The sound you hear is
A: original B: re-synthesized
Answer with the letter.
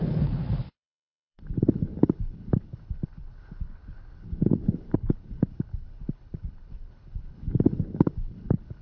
B